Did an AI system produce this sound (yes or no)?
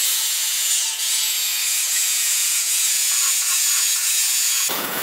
yes